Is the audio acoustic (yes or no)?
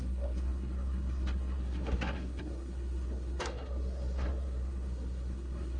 no